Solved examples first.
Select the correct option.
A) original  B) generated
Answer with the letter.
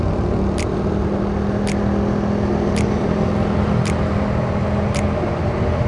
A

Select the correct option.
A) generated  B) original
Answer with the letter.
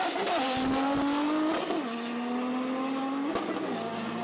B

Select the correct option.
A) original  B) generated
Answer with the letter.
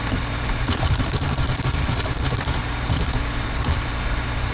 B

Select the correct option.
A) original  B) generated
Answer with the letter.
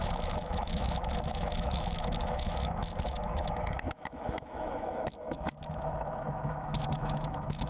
B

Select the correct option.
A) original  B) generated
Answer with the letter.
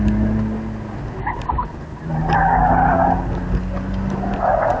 A